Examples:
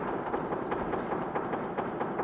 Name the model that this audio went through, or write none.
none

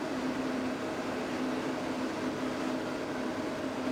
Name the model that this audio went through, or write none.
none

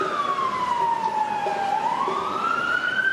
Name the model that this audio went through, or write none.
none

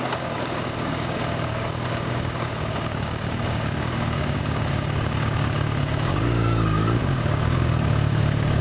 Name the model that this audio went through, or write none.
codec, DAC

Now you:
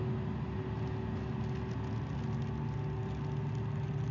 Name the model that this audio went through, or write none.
none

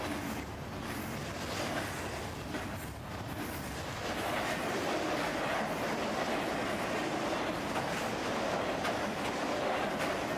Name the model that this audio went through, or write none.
none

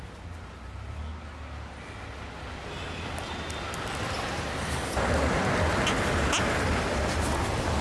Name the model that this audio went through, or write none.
none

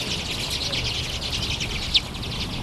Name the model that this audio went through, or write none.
none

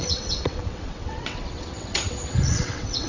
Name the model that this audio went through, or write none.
vocoder, WaveNeXt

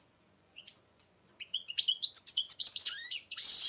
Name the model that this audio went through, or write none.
vocoder, Vocos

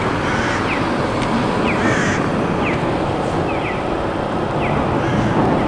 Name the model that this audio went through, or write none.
none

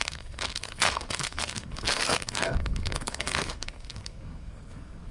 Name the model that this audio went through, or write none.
codec, SNAC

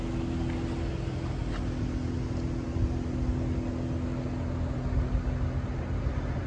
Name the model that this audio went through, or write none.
none